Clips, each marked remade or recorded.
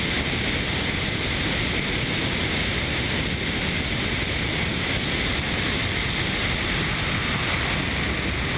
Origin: recorded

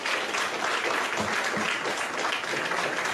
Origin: recorded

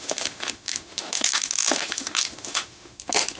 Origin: remade